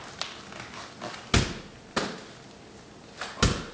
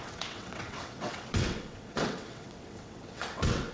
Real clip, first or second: first